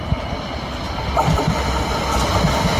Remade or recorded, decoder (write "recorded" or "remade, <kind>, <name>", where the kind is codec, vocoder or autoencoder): recorded